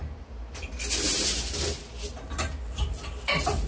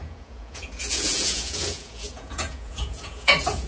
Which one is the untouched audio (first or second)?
first